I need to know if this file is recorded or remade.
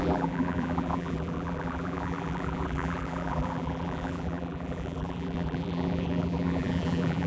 remade